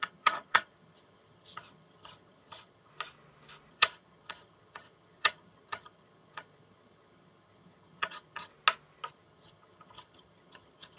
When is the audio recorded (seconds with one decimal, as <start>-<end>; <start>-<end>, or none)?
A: 2.9-3.7; 8.5-9.1